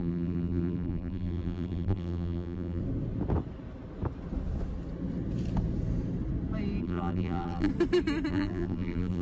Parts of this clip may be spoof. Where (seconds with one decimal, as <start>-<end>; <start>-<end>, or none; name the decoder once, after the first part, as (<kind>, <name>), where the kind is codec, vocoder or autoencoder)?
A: 0.0-2.8 (vocoder, BigVGAN v2); 6.8-7.7; 8.3-9.2